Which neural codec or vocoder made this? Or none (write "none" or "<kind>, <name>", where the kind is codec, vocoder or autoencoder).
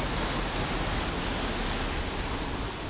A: none